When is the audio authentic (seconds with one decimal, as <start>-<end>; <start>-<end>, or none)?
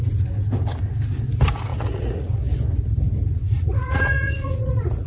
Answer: 0.0-1.7; 2.4-3.4